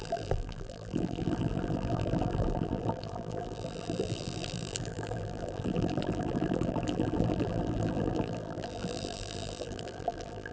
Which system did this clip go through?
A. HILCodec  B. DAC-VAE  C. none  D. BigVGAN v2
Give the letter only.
D